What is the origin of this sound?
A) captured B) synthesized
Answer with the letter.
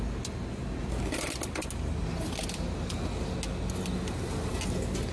A